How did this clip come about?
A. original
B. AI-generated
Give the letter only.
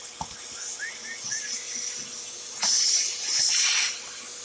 A